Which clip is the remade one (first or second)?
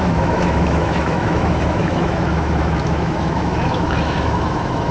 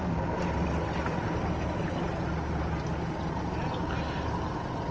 first